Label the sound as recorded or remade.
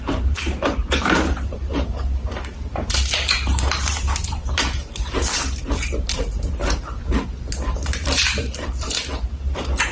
remade